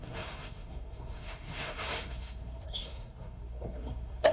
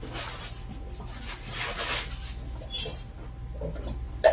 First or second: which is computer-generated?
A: first